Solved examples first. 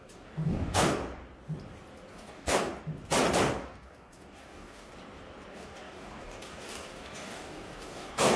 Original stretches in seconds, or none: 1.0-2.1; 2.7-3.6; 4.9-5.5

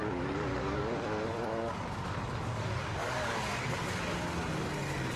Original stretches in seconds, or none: 0.0-0.6; 3.4-5.2

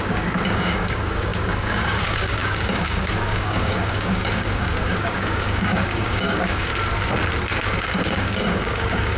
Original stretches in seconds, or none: 6.7-7.8

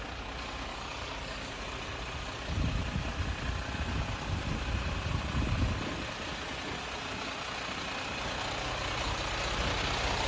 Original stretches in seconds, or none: 0.0-0.7; 1.5-10.3